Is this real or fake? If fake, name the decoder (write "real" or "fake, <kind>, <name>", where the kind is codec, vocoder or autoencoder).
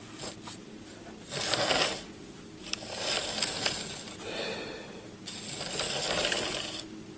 real